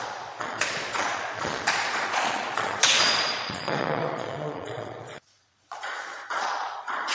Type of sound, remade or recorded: remade